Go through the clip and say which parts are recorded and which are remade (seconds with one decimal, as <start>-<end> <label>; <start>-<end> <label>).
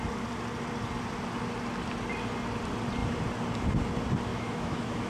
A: 0.0-4.3 recorded; 4.3-5.1 remade